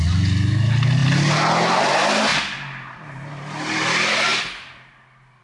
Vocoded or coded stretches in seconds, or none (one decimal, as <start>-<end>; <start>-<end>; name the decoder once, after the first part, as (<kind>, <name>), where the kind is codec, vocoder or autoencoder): none